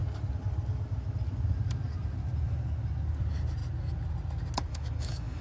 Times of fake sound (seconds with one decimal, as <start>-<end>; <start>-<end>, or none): 4.7-5.4